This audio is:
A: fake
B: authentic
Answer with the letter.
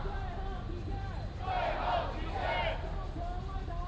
B